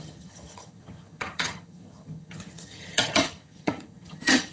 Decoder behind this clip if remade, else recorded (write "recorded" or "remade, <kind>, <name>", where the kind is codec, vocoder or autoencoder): remade, vocoder, HiFi-GAN